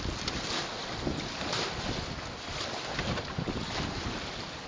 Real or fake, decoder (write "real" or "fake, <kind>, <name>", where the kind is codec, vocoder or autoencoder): real